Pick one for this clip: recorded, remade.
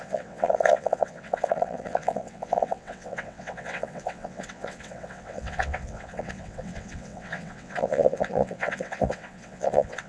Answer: remade